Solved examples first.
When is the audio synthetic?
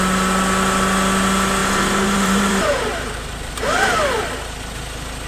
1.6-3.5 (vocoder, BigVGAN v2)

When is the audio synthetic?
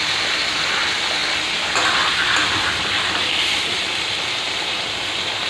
1.2-4.5 (vocoder, BigVGAN v2)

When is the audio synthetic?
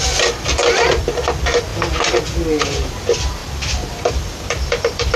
0.0-1.7 (vocoder, BigVGAN v2); 2.6-5.2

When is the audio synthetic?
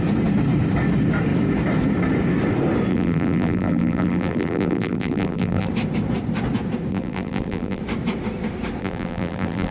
2.9-5.7 (vocoder, BigVGAN v2); 6.9-7.8; 8.8-9.7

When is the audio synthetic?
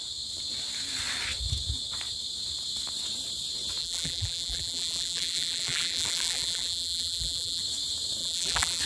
3.8-7.6 (vocoder, BigVGAN v2); 8.2-8.8